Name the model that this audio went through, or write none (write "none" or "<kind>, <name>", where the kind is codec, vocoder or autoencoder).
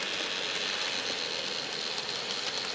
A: none